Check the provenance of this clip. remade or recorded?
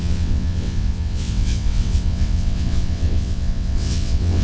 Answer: remade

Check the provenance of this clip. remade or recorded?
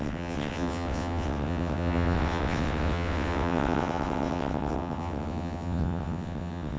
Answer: remade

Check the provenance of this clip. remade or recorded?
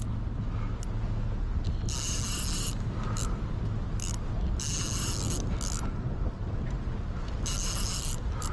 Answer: recorded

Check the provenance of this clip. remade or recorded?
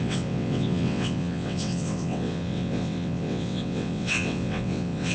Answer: remade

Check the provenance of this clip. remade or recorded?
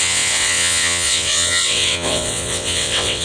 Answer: remade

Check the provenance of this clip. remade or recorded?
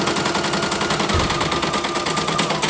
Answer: recorded